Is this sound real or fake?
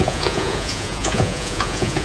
fake